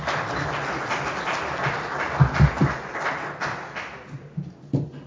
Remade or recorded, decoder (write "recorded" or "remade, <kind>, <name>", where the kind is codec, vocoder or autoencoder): recorded